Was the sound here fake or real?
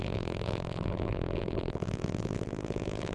fake